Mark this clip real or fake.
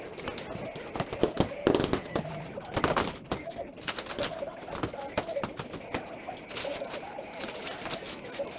real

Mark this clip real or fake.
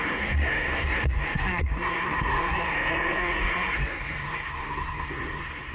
fake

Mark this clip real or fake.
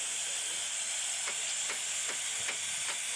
real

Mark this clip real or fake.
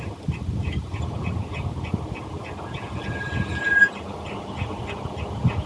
real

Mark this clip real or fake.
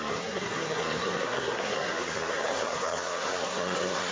fake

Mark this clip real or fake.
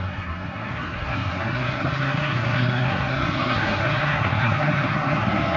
fake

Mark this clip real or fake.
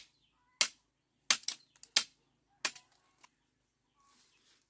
real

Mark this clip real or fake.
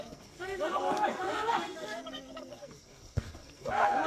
fake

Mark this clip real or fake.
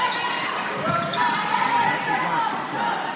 real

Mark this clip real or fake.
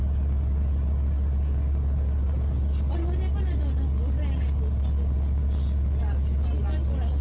real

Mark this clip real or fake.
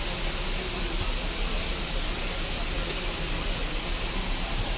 real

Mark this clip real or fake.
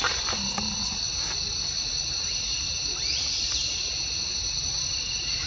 real